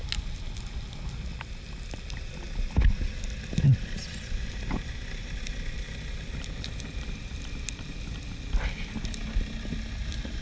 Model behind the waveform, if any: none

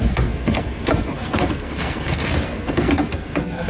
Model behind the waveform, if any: codec, SNAC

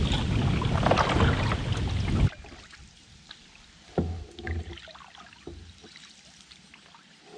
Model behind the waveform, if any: none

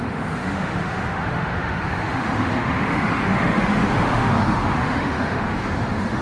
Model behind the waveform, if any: autoencoder, DAC-VAE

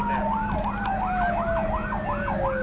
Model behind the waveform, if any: none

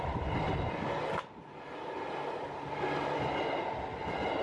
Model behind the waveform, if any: none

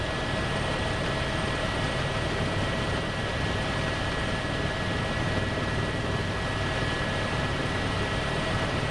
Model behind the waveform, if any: vocoder, BigVGAN v2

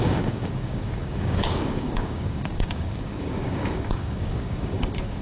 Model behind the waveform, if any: codec, DAC